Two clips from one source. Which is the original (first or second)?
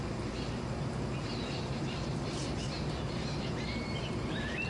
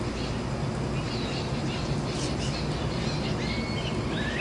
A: second